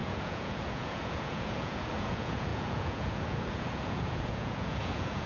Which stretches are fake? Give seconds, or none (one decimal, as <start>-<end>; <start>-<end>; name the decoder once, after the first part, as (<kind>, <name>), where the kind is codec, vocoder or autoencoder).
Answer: 0.0-5.3 (vocoder, Vocos)